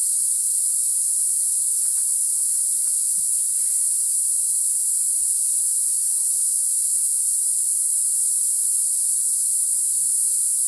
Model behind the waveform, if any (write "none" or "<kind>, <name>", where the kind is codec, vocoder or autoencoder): none